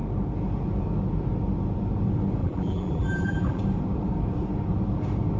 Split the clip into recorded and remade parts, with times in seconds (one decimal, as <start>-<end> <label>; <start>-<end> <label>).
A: 0.0-2.4 recorded; 2.4-3.6 remade; 3.6-5.4 recorded